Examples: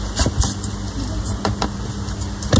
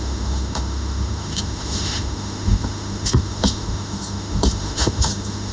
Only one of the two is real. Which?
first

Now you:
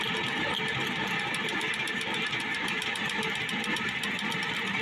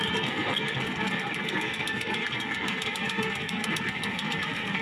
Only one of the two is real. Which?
first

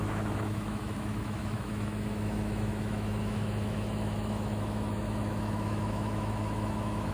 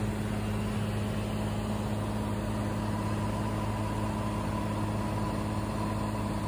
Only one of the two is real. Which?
second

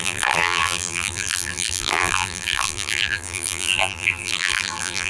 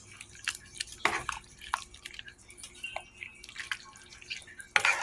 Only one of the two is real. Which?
second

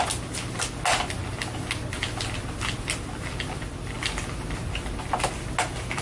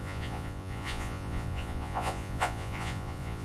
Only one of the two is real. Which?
first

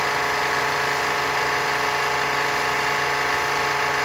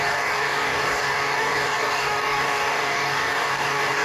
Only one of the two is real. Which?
first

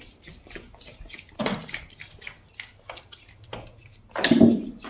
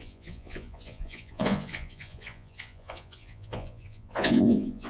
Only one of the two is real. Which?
first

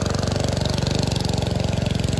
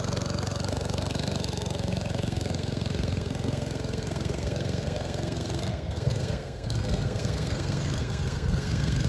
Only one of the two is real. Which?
first